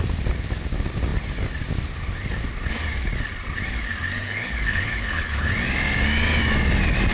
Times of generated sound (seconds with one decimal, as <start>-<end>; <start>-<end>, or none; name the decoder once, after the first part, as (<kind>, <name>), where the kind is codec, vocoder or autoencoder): 4.2-5.5 (codec, HILCodec)